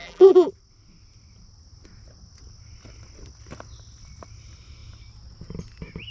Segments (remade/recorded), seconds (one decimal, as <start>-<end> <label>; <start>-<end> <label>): 0.0-0.5 remade; 0.5-6.1 recorded